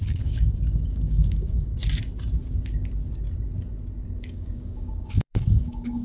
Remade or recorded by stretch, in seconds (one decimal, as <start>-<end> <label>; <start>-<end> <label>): 0.0-1.7 remade; 1.7-4.2 recorded; 4.2-6.0 remade